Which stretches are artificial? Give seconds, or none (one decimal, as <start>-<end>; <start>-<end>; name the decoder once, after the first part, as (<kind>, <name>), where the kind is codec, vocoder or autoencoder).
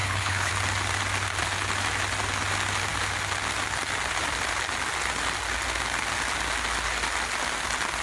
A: 0.0-0.5 (codec, HILCodec)